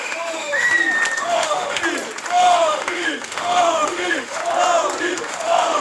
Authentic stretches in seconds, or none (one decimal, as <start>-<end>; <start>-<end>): 0.7-1.2; 1.8-2.3; 4.4-5.0

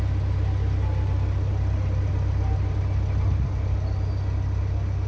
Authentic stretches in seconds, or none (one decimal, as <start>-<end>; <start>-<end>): 0.0-5.1

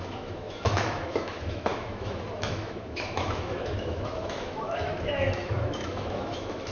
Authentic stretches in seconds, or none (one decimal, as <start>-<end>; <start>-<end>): none

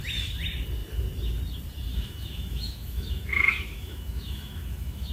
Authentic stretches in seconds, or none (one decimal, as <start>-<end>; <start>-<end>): 0.0-1.9